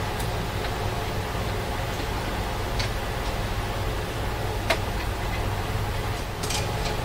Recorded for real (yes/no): yes